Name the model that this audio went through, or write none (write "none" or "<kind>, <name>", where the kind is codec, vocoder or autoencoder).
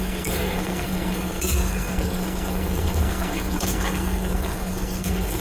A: codec, SNAC